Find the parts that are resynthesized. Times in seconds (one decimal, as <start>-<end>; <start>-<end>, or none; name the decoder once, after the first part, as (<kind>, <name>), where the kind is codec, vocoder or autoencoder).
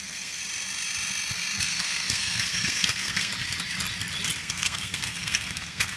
0.0-0.4 (codec, SNAC); 1.6-3.3; 4.4-6.0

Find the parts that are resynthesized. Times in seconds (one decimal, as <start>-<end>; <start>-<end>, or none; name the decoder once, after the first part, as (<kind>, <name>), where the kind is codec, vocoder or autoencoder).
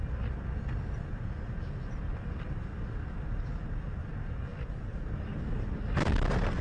none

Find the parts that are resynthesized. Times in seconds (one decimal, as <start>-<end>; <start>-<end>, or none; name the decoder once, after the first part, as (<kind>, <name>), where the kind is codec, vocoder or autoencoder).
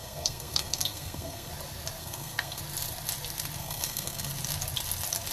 0.0-1.5 (codec, SNAC); 2.0-2.6; 3.6-4.3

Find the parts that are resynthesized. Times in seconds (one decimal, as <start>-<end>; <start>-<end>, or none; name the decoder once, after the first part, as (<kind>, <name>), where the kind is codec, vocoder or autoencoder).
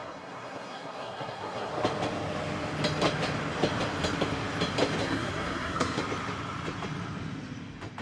0.0-1.7 (codec, SNAC); 5.0-6.0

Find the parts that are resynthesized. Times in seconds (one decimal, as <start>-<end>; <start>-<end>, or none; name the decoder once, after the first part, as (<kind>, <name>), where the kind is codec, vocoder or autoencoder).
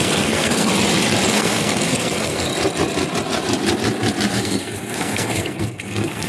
0.0-0.7 (codec, SNAC); 1.3-2.5; 4.3-6.3